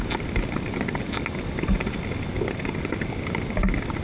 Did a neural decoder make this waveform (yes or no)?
no